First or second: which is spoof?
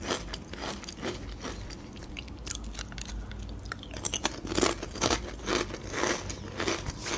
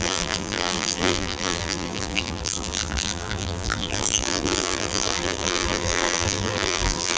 second